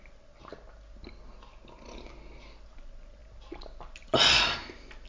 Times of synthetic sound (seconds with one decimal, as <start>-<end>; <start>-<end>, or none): none